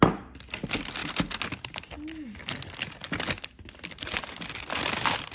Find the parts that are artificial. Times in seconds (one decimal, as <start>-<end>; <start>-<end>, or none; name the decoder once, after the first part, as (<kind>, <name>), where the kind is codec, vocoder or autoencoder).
none